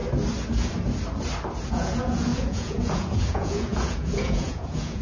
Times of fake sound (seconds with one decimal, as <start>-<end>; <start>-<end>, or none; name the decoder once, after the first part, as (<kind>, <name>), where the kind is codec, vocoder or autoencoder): 1.7-5.0 (vocoder, Vocos)